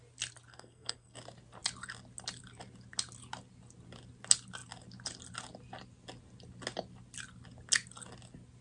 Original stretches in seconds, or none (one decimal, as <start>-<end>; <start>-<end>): 0.0-0.5; 1.2-8.6